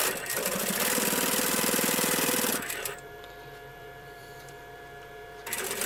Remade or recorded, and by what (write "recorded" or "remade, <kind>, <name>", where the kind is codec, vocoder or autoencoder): remade, vocoder, BigVGAN v2